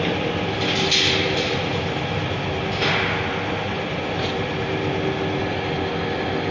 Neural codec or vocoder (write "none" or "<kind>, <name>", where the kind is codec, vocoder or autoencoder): none